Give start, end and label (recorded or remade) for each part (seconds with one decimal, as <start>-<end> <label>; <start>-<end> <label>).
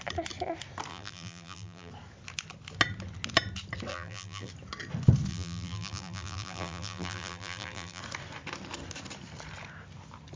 0.0-0.9 recorded; 0.9-1.9 remade; 1.9-3.9 recorded; 3.9-4.5 remade; 4.5-5.3 recorded; 5.3-8.0 remade; 8.0-10.4 recorded